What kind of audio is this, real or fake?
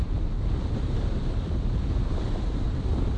fake